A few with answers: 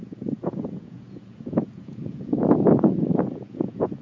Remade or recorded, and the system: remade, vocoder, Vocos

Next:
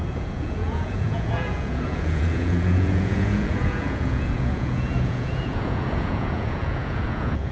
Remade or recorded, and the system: remade, vocoder, Vocos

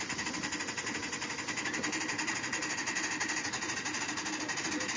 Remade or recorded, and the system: recorded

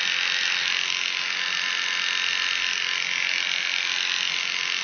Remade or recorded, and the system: recorded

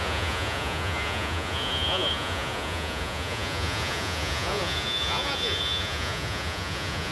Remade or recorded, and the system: remade, vocoder, Vocos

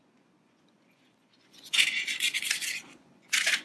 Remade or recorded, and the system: remade, vocoder, Vocos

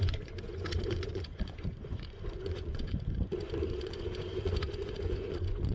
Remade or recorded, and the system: remade, vocoder, Vocos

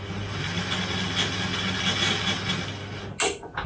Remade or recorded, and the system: recorded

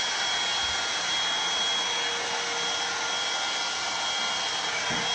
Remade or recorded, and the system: recorded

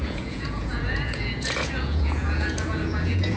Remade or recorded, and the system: remade, vocoder, Vocos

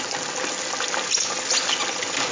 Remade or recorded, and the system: recorded